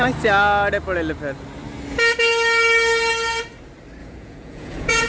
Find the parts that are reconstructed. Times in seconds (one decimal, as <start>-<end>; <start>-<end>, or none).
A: 4.0-5.1